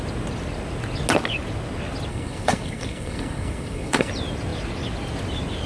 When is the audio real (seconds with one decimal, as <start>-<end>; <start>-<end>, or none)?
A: 0.0-2.1; 4.1-5.7